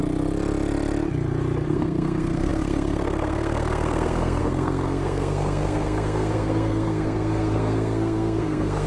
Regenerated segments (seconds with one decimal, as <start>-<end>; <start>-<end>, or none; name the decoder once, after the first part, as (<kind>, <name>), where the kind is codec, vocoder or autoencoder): 1.7-8.9 (codec, SNAC)